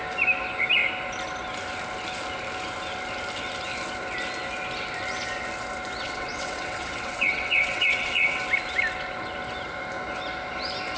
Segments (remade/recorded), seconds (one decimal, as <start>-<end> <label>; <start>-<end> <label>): 0.0-6.0 recorded; 6.0-8.4 remade; 8.4-11.0 recorded